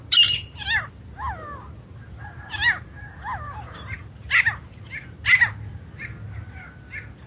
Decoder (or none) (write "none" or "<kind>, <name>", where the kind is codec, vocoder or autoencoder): none